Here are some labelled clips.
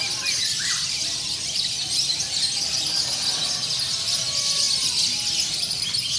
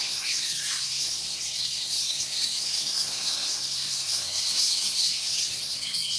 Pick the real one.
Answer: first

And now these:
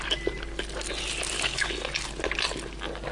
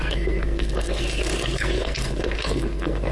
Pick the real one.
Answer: first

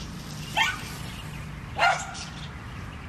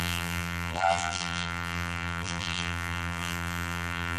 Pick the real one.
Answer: first